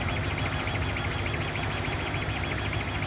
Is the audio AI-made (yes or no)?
no